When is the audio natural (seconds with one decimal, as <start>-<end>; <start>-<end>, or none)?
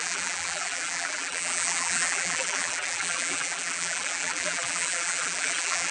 none